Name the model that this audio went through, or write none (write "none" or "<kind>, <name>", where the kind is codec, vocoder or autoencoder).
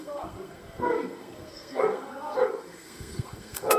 codec, SNAC